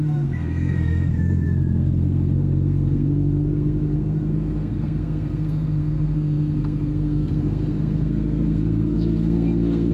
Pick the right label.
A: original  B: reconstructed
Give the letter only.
B